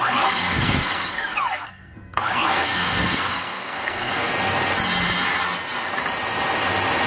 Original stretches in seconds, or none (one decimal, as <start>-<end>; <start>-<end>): 4.3-7.1